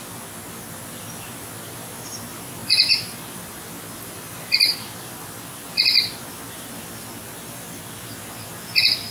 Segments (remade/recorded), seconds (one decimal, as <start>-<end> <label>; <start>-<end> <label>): 0.0-2.6 recorded; 2.6-7.1 remade; 7.1-9.1 recorded

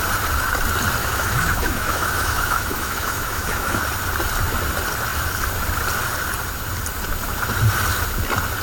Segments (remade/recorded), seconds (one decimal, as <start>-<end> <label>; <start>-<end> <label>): 0.0-1.0 recorded; 1.0-3.8 remade; 3.8-8.6 recorded

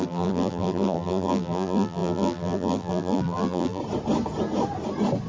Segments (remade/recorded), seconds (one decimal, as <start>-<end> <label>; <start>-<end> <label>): 0.0-3.8 remade; 3.8-5.3 recorded

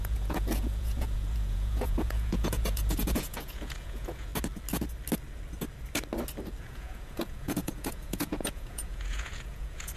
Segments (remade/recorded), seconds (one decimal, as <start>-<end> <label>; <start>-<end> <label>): 0.0-4.3 remade; 4.3-6.6 recorded; 6.6-10.0 remade

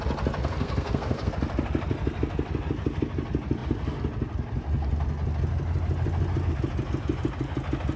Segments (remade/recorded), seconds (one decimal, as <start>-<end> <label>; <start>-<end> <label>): 0.0-0.4 recorded; 0.4-1.3 remade; 1.3-8.0 recorded